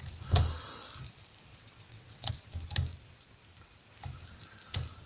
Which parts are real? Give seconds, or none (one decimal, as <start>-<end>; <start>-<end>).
0.0-1.5; 2.3-5.1